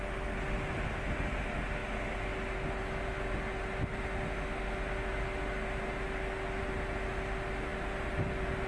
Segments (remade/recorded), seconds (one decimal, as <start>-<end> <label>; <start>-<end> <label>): 0.0-8.7 recorded